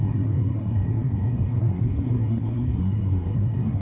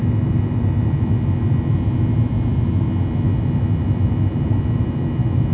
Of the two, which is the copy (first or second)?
first